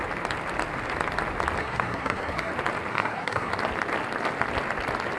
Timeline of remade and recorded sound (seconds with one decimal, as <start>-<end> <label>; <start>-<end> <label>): 0.0-1.6 recorded; 1.6-2.5 remade; 2.5-2.9 recorded; 2.9-3.5 remade; 3.5-5.2 recorded